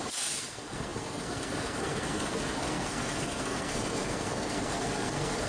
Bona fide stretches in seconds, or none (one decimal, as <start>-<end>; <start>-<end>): none

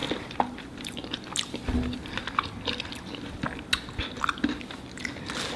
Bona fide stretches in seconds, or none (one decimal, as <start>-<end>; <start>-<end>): 3.4-5.6

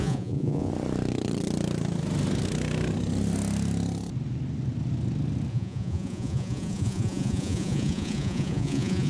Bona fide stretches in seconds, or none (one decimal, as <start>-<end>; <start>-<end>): 0.7-5.5

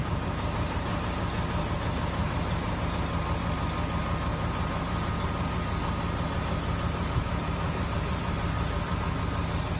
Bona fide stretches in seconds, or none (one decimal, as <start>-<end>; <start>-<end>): 1.1-2.2; 2.8-4.3; 9.0-9.8

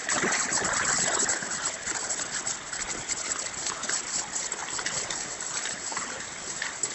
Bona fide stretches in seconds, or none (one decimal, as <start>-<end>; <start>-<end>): 0.0-6.9

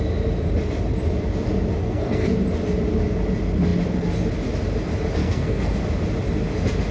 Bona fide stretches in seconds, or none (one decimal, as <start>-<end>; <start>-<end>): 0.0-1.8; 2.3-5.2; 5.8-6.9

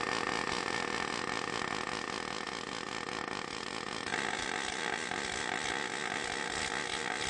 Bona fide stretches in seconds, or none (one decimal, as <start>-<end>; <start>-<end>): 0.0-4.1; 5.7-7.3